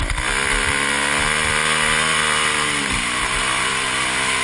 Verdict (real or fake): real